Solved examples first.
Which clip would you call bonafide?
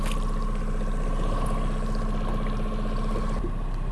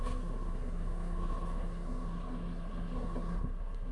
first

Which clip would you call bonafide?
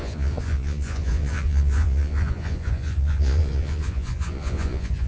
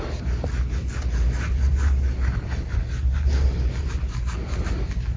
second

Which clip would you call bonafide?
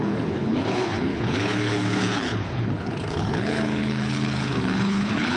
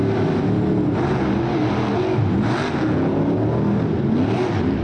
second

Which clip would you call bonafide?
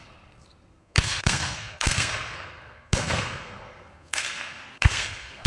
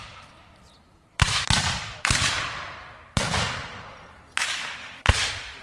second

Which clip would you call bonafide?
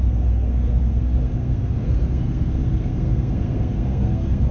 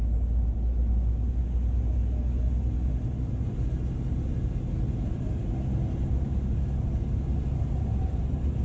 second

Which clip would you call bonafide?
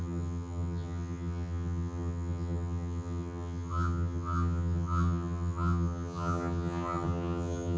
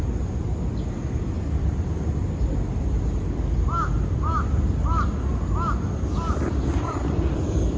second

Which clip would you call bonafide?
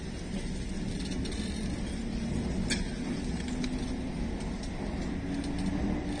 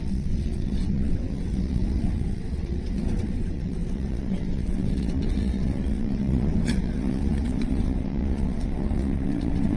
first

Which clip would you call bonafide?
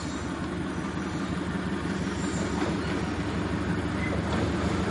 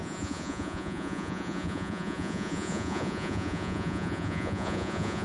first